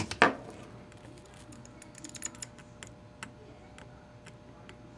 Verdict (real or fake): real